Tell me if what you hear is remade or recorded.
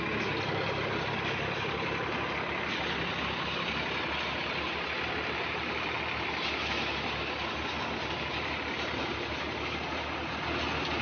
recorded